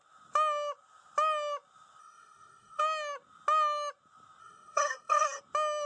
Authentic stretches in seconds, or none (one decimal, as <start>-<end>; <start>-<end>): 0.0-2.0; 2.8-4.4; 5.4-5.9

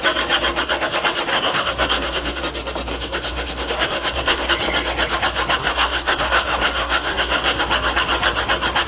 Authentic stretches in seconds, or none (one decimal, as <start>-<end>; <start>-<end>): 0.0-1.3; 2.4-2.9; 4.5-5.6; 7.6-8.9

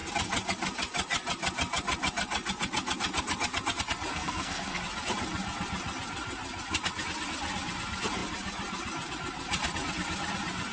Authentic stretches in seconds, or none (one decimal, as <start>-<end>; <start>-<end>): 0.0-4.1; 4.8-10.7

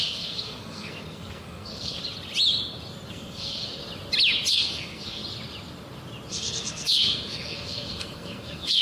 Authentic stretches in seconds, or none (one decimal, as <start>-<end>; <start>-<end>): 2.0-3.1; 3.8-4.5; 5.2-6.3